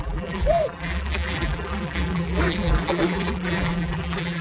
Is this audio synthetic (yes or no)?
yes